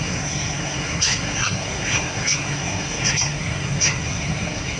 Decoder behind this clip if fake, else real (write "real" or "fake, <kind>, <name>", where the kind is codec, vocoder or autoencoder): fake, codec, SNAC